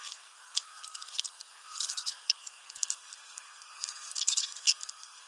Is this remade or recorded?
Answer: remade